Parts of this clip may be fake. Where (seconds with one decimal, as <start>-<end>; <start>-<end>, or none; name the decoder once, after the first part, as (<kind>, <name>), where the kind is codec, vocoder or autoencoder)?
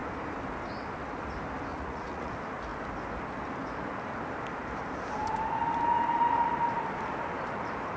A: 1.7-2.3 (vocoder, Vocos)